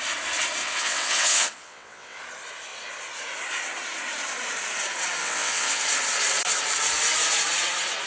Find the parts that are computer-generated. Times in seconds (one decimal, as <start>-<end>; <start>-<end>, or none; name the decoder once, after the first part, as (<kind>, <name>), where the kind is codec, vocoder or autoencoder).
0.6-2.2 (vocoder, WaveNeXt); 5.2-5.8